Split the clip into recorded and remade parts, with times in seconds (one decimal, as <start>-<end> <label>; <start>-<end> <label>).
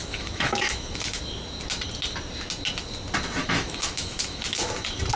0.0-1.2 remade; 1.2-3.4 recorded; 3.4-4.6 remade; 4.6-5.2 recorded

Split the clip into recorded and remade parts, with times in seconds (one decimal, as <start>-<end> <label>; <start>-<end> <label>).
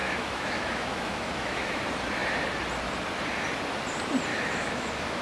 0.0-1.8 remade; 1.8-4.3 recorded; 4.3-5.2 remade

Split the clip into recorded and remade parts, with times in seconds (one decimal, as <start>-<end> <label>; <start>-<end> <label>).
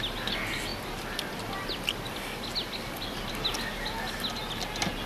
0.0-5.1 recorded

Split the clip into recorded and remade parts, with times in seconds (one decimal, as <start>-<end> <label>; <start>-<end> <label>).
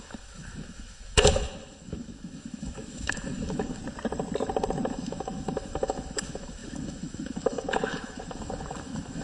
0.0-3.8 remade; 3.8-4.9 recorded; 4.9-9.2 remade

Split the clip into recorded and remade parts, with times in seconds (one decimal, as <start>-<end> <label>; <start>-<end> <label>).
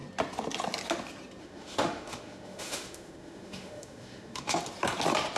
0.0-1.4 recorded; 1.4-4.6 remade; 4.6-5.4 recorded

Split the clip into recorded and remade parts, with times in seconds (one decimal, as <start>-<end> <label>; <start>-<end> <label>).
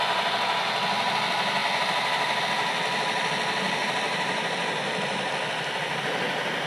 0.0-6.7 recorded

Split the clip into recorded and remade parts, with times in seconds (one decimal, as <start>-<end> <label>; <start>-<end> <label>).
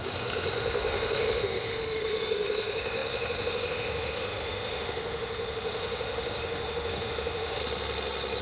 0.0-7.6 remade; 7.6-8.4 recorded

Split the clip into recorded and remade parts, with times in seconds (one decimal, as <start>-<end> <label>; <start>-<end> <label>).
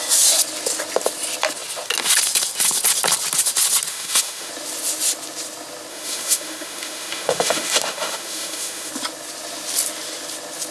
0.0-3.9 recorded; 3.9-4.5 remade; 4.5-5.9 recorded; 5.9-8.9 remade; 8.9-10.7 recorded